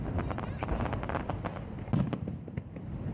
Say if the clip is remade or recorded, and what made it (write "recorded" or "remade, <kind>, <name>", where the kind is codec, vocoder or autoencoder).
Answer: recorded